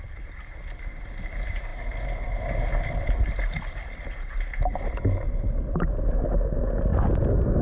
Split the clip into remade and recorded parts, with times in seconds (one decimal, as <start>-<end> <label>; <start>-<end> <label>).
0.0-7.6 recorded